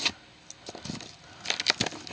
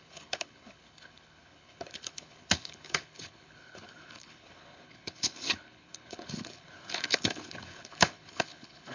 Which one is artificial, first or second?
second